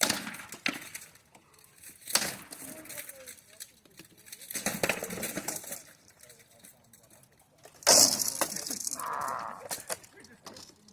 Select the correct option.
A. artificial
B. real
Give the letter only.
B